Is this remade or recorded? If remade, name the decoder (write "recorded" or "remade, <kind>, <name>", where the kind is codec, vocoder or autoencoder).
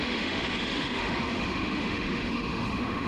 remade, autoencoder, DAC-VAE